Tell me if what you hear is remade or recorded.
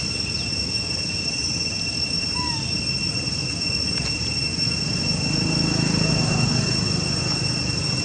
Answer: recorded